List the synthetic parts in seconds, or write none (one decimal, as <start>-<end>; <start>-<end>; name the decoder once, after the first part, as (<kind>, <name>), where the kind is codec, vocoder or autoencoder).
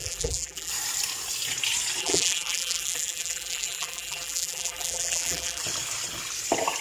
0.0-0.7 (vocoder, BigVGAN v2); 2.0-5.6